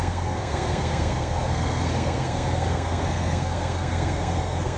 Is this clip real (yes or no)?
no